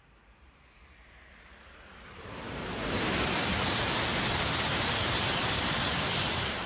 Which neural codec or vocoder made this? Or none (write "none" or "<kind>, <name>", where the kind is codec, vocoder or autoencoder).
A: vocoder, BigVGAN v2